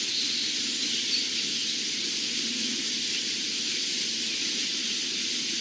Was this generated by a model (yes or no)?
yes